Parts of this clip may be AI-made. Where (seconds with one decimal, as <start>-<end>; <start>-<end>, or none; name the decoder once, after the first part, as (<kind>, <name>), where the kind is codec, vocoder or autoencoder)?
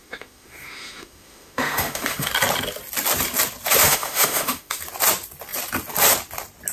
0.0-2.3 (autoencoder, DAC-VAE); 3.8-4.8